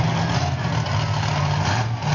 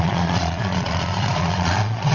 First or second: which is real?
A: first